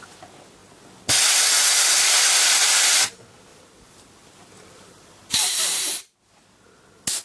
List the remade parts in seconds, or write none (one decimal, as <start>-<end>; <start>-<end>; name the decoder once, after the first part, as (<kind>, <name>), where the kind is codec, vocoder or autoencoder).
3.5-5.9 (vocoder, BigVGAN v2)